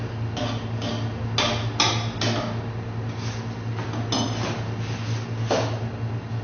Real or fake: real